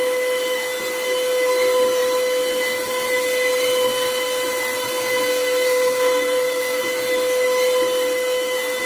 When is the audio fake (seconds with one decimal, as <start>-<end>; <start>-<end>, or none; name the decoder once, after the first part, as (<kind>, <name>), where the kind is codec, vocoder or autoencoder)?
5.3-6.8 (codec, SNAC)